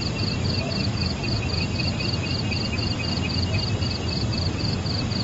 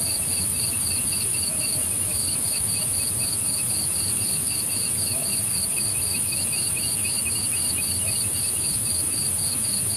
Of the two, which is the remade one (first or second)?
second